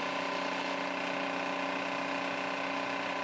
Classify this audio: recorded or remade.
recorded